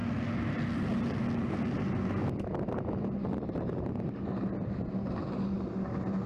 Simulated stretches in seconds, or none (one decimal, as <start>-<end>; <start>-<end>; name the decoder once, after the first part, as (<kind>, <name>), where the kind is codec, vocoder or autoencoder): none